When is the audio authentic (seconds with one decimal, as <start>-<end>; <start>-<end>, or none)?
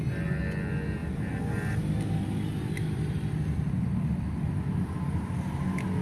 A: 0.0-6.0